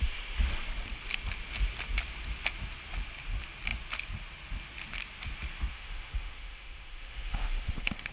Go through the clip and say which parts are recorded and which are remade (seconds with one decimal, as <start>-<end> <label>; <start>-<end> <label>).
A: 0.0-5.7 recorded; 5.7-8.1 remade